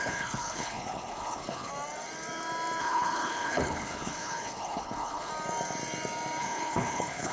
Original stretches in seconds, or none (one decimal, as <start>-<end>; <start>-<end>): 1.7-2.8; 5.3-6.4